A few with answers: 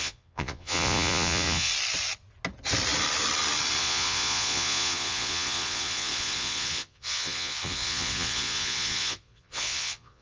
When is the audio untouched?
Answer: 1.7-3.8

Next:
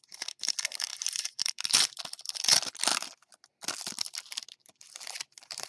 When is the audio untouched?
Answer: 0.0-0.9; 1.5-5.7